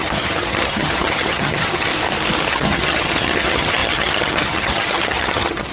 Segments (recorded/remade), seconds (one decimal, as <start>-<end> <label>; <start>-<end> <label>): 0.0-1.9 remade; 1.9-2.5 recorded; 2.5-5.7 remade